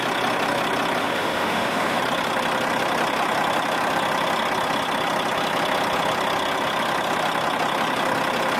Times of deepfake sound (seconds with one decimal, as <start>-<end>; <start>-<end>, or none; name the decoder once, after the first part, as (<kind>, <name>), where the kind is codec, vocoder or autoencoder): 1.0-2.0 (autoencoder, DAC-VAE)